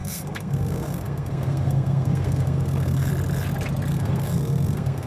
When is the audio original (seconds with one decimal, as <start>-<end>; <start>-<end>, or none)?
3.1-3.9